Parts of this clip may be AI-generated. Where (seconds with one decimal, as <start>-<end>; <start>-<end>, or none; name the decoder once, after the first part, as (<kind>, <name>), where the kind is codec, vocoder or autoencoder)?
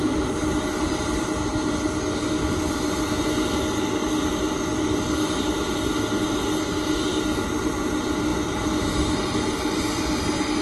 none